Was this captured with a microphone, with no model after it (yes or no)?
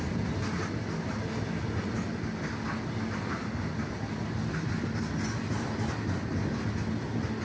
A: yes